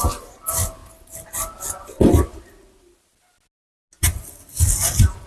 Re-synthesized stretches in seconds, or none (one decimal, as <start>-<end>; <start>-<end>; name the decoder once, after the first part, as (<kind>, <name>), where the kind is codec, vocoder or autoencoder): 0.0-0.8 (vocoder, BigVGAN v2); 4.0-5.3